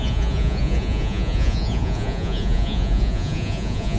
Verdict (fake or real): fake